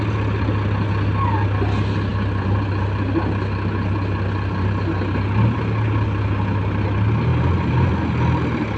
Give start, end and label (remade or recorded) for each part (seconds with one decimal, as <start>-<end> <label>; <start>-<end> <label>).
0.0-7.3 recorded; 7.3-7.9 remade; 7.9-8.8 recorded